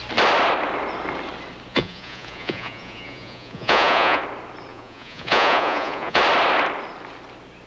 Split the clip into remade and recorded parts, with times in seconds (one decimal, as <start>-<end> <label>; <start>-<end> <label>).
0.0-1.7 recorded; 1.7-4.2 remade; 4.2-4.7 recorded; 4.7-6.2 remade; 6.2-7.7 recorded